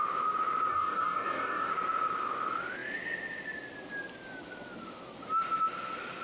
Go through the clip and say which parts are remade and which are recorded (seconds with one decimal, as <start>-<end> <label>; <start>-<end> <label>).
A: 0.0-0.7 recorded; 0.7-1.7 remade; 1.7-6.2 recorded